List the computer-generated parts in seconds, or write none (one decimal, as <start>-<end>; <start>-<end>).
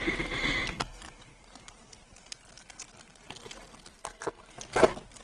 4.0-4.5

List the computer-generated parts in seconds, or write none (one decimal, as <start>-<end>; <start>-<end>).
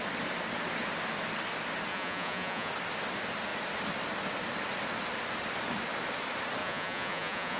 1.9-2.7; 6.6-7.6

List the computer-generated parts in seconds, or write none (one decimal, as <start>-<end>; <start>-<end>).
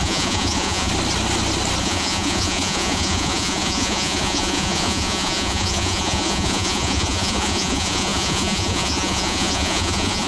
0.0-0.9; 1.8-10.3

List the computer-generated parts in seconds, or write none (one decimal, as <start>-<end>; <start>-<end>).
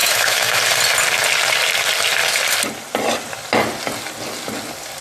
0.0-0.6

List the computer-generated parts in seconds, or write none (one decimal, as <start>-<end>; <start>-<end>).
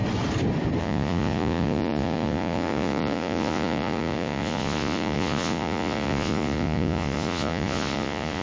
0.8-8.4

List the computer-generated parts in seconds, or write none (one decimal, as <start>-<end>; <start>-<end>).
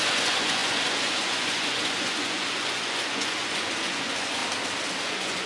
0.0-4.4; 5.0-5.5